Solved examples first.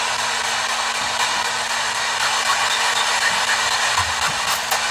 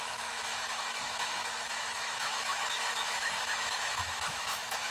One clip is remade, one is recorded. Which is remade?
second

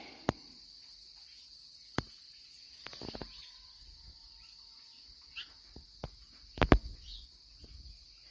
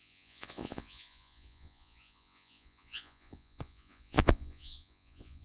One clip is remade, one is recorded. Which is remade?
second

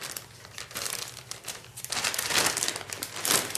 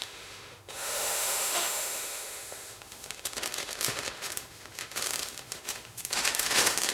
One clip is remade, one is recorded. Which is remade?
second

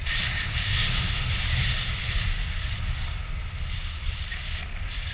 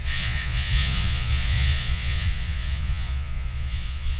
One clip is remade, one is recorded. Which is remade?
second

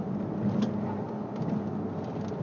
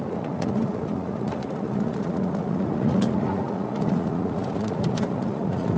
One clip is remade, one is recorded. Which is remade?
second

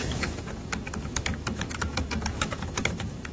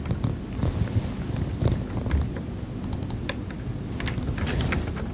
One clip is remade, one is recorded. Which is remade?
first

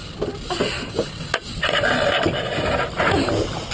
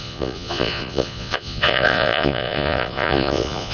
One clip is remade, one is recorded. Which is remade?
second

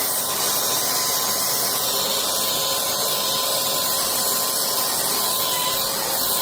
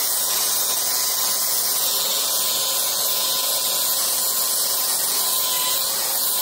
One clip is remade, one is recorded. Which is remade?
second